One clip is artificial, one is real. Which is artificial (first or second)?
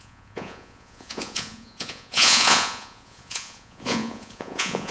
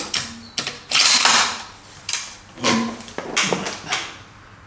first